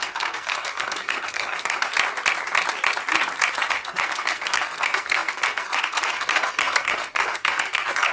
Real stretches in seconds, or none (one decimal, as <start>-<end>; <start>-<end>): 1.9-3.7